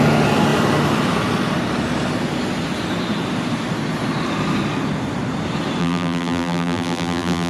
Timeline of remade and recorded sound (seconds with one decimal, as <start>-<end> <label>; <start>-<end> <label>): 0.0-5.8 recorded; 5.8-7.5 remade